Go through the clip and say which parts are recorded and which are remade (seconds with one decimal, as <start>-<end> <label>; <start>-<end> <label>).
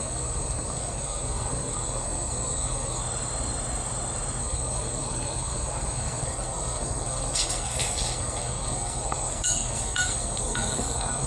0.0-3.0 remade; 3.0-4.4 recorded; 4.4-11.3 remade